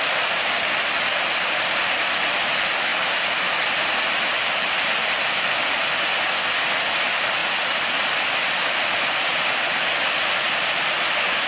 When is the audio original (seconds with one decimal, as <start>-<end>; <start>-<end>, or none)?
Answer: 0.0-11.5